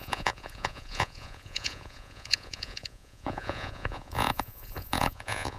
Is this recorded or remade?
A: remade